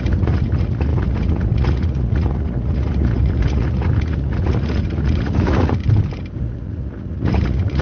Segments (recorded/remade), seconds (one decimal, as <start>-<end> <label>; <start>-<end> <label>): 0.0-5.8 remade; 5.8-6.4 recorded; 6.4-7.8 remade